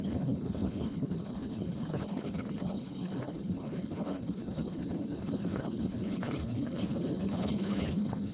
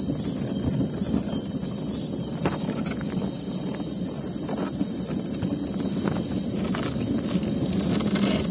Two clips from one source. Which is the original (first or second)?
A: second